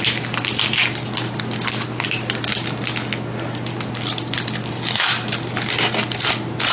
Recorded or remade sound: recorded